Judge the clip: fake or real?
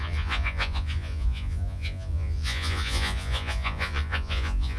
fake